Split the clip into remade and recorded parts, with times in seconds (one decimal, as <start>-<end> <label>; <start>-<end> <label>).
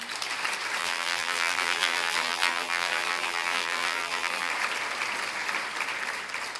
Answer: 0.0-0.8 recorded; 0.8-4.5 remade; 4.5-6.6 recorded